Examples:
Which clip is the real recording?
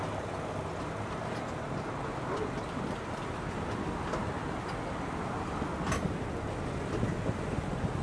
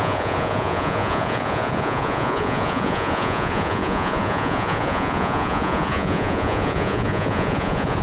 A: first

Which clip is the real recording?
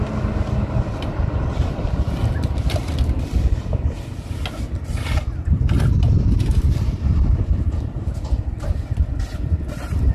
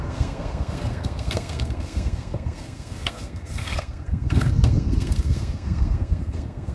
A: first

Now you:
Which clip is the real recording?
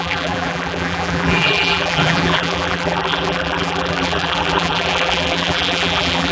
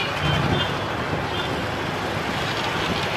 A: second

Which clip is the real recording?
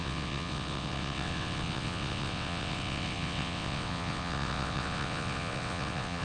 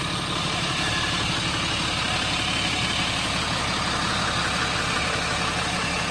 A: second